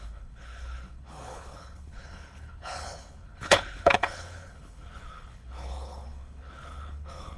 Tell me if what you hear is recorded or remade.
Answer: remade